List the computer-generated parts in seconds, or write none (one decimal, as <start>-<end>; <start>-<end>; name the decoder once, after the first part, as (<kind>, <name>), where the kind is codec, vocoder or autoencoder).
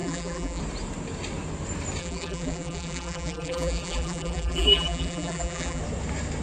0.0-0.6 (vocoder, BigVGAN v2); 2.0-5.8